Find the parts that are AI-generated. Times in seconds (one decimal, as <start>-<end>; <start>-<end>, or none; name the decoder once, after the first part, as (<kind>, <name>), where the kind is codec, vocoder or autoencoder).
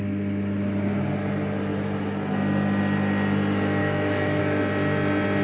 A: 3.8-4.4 (autoencoder, DAC-VAE)